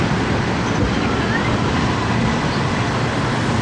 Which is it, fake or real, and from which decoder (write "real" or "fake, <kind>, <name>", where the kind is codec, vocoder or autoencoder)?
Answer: real